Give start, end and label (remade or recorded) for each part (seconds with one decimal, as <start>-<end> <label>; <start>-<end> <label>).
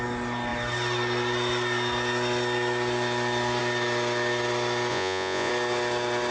0.0-4.9 recorded; 4.9-5.5 remade; 5.5-6.3 recorded